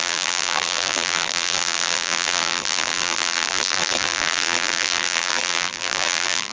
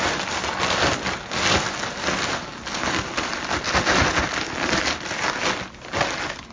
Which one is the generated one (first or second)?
first